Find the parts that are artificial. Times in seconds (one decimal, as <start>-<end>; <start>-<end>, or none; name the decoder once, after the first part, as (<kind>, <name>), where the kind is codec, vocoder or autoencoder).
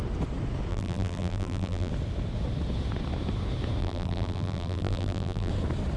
0.7-1.9 (vocoder, BigVGAN v2); 3.8-5.5